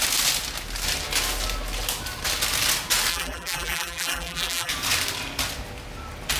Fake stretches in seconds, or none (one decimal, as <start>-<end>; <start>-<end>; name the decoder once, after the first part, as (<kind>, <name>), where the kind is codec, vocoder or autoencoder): 3.1-4.7 (vocoder, BigVGAN v2)